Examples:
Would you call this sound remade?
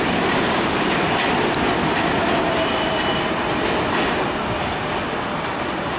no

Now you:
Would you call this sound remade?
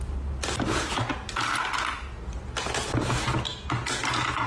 no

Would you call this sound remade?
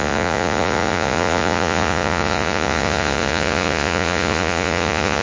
yes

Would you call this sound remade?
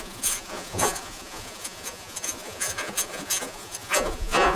yes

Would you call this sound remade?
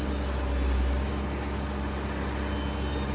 no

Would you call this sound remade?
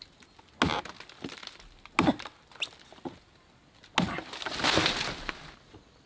no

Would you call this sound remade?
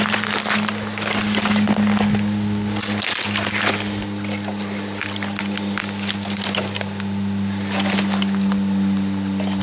no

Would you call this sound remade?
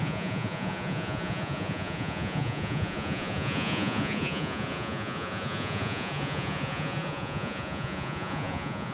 yes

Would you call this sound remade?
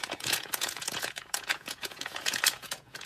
yes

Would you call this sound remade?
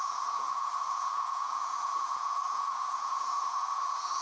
yes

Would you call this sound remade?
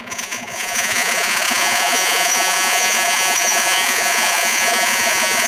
yes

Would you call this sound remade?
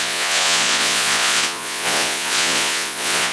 yes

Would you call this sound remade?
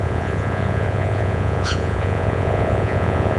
yes